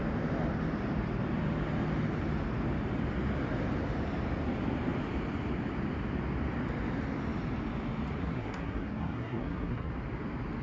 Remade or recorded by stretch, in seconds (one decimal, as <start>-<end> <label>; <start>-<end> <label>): 0.0-8.2 recorded; 8.2-9.9 remade; 9.9-10.6 recorded